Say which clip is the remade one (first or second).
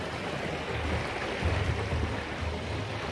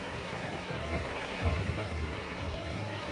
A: second